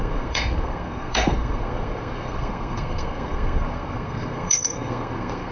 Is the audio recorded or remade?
remade